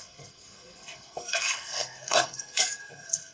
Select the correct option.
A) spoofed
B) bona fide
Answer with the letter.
A